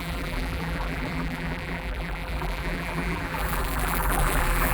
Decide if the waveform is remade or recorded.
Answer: remade